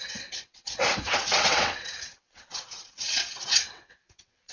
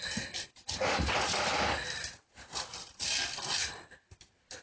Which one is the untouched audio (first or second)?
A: second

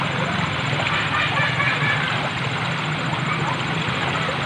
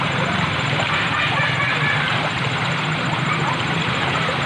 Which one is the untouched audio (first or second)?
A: first